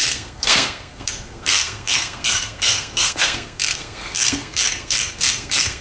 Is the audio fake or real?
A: fake